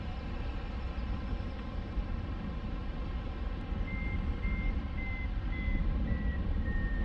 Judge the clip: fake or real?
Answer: real